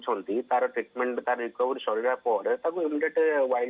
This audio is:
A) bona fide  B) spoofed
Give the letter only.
A